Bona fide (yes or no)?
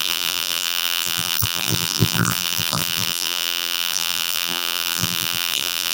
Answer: no